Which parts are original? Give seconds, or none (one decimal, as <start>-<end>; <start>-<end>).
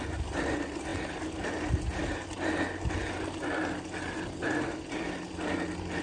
0.0-6.0